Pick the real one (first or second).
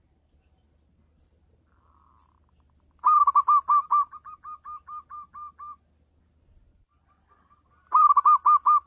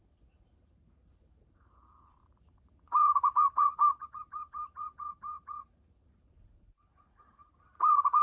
first